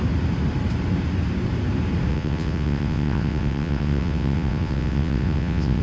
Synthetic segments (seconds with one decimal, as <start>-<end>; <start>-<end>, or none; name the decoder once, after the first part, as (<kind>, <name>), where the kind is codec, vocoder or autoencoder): 2.1-5.8 (vocoder, WaveNeXt)